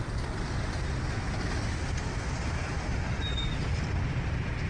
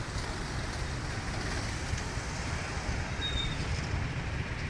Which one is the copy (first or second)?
second